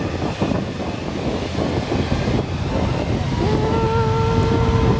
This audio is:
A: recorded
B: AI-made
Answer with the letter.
A